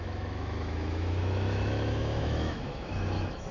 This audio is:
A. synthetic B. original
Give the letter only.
A